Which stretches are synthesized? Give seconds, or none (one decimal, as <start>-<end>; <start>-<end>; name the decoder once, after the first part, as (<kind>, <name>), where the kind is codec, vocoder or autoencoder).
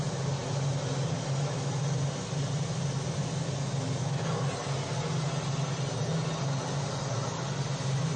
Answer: none